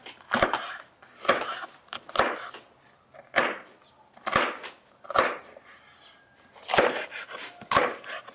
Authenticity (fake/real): real